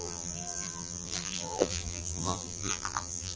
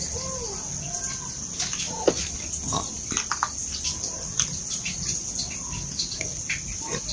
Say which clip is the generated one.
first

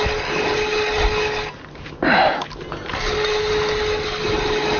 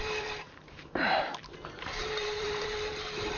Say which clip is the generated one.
second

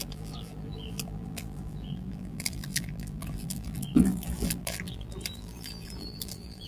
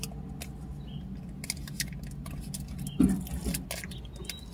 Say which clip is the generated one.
first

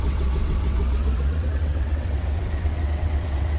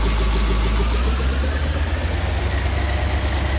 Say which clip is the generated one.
first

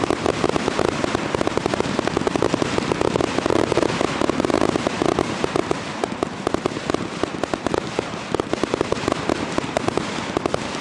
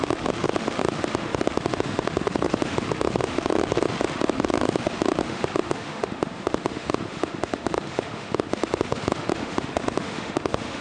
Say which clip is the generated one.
second